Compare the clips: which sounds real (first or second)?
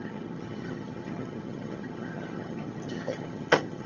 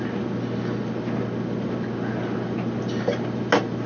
second